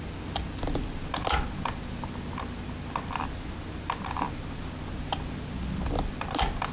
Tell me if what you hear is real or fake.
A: real